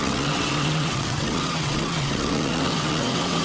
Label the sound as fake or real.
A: fake